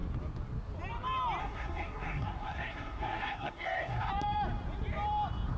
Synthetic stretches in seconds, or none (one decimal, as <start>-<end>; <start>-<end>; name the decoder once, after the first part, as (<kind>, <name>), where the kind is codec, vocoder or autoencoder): 1.4-4.1 (codec, SNAC)